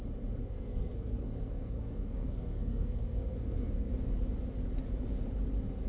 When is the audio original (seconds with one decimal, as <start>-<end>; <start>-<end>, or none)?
0.0-0.4; 3.9-5.9

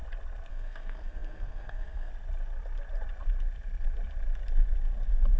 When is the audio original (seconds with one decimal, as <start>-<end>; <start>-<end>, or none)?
0.0-0.5; 2.1-5.4

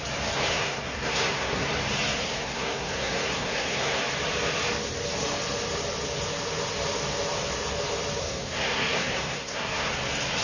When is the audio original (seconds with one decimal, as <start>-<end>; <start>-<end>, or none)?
0.0-0.5; 1.7-2.2; 4.0-8.2; 9.9-10.4